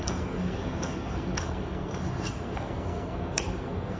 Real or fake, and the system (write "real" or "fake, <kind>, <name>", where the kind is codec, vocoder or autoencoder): fake, codec, SNAC